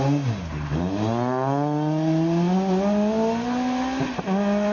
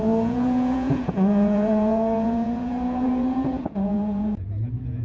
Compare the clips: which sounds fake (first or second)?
second